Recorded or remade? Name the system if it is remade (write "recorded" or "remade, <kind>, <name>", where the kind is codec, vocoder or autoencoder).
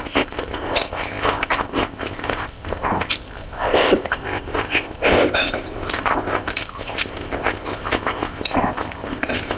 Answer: remade, codec, ZipCodec